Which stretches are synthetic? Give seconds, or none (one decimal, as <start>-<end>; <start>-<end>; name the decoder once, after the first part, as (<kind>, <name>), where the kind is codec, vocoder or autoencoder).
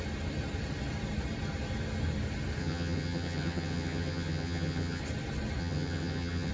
2.6-5.0 (vocoder, HiFi-GAN); 5.6-6.5